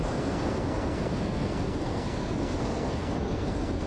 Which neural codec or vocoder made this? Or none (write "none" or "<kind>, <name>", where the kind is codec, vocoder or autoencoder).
codec, SNAC